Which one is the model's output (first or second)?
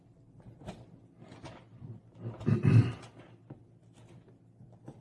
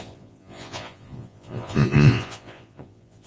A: second